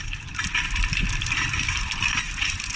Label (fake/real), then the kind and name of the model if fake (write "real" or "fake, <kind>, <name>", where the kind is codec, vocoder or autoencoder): real